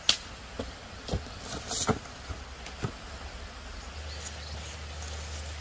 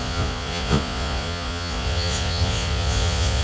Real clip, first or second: first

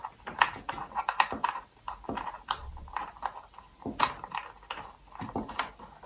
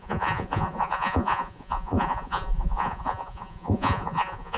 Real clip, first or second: first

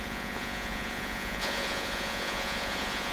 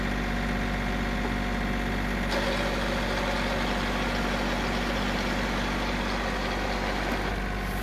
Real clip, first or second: second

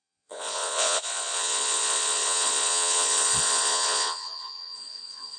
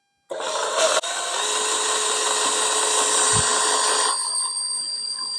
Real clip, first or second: second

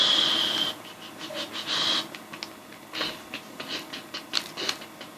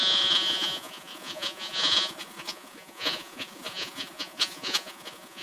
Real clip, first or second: first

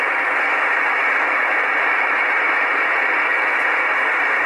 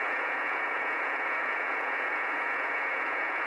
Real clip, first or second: first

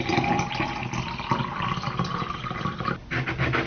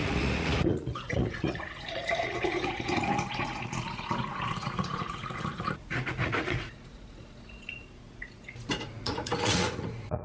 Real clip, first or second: first